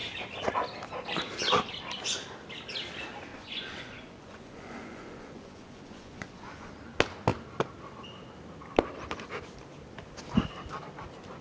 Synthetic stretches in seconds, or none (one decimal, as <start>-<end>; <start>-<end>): 3.3-6.7